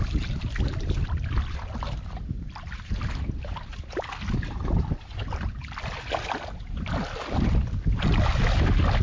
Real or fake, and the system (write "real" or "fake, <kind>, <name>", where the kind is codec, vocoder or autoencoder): real